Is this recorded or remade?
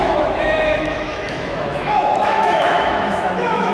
remade